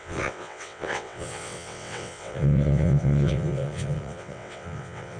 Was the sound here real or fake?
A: fake